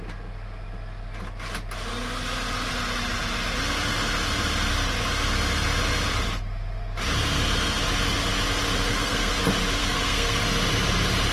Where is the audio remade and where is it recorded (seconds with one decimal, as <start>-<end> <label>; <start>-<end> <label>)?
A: 0.0-8.9 recorded; 8.9-9.4 remade; 9.4-9.8 recorded; 9.8-10.4 remade; 10.4-11.3 recorded